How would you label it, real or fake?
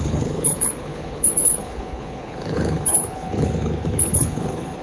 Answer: fake